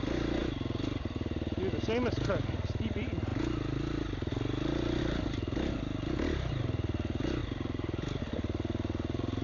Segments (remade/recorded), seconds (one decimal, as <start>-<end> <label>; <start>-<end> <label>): 0.0-7.4 recorded; 7.4-8.2 remade; 8.2-9.4 recorded